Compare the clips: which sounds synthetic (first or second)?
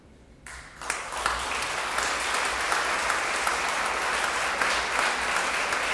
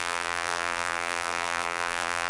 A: second